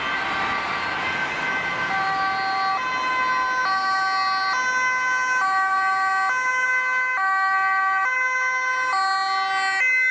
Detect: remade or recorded recorded